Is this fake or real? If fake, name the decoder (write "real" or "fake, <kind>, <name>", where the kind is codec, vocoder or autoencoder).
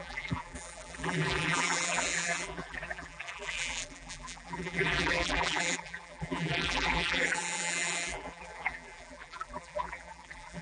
fake, vocoder, BigVGAN v2